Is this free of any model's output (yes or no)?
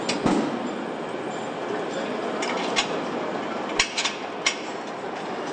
yes